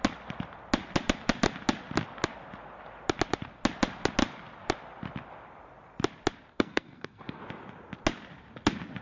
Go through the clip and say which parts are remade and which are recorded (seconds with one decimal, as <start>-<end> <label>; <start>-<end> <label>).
0.0-6.5 recorded; 6.5-7.4 remade; 7.4-9.0 recorded